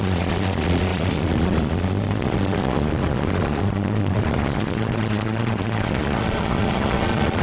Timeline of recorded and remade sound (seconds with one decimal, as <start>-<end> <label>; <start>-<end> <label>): 0.0-7.4 remade